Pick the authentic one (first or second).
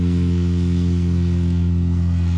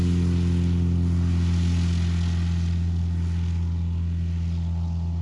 second